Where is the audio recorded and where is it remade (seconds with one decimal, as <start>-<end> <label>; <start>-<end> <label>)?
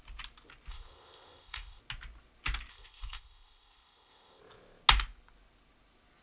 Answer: 0.0-0.7 recorded; 0.7-1.8 remade; 1.8-2.7 recorded; 2.7-4.4 remade; 4.4-6.2 recorded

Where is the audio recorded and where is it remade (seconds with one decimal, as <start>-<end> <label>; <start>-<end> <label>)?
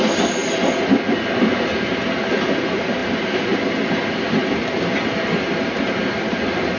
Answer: 0.0-6.8 recorded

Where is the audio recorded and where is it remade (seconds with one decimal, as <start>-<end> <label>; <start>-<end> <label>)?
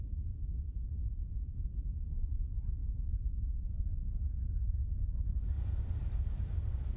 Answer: 0.0-1.0 recorded; 1.0-1.5 remade; 1.5-4.8 recorded; 4.8-5.8 remade; 5.8-7.0 recorded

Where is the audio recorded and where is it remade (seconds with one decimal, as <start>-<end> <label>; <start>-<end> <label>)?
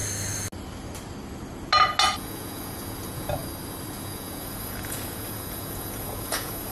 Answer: 0.0-2.2 recorded; 2.2-3.4 remade; 3.4-3.9 recorded; 3.9-6.7 remade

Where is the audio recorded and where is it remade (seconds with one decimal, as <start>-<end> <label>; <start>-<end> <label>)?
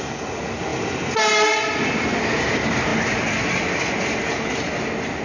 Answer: 0.0-5.2 recorded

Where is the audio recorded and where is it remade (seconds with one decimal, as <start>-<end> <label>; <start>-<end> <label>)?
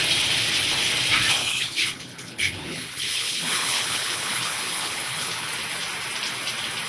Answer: 0.0-1.4 recorded; 1.4-5.5 remade; 5.5-6.9 recorded